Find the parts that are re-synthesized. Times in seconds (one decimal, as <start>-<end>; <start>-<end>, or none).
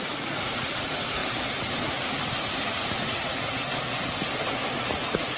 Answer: 0.0-1.2; 2.6-3.7; 4.9-5.4